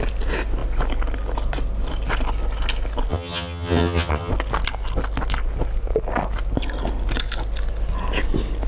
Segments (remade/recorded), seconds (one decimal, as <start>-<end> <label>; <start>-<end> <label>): 0.0-3.1 recorded; 3.1-4.3 remade; 4.3-8.7 recorded